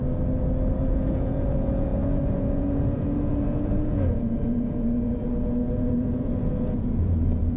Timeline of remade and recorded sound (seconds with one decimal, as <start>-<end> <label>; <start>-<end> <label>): 0.0-0.8 recorded; 0.8-7.6 remade